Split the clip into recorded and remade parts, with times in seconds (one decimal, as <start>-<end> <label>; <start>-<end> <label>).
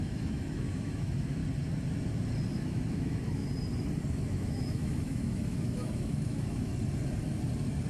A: 0.0-1.4 remade; 1.4-2.5 recorded; 2.5-3.4 remade; 3.4-4.1 recorded; 4.1-6.7 remade; 6.7-7.9 recorded